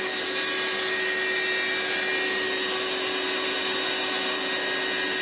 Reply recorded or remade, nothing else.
recorded